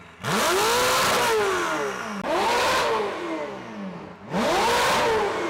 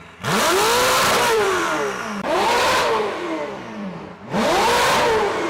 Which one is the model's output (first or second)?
second